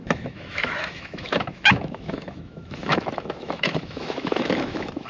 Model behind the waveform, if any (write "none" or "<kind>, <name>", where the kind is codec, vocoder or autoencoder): autoencoder, DAC-VAE